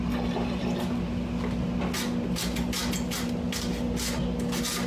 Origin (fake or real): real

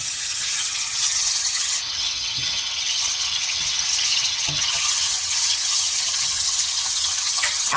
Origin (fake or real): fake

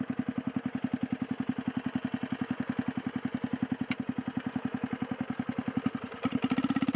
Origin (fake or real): real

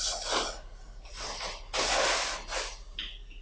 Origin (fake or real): fake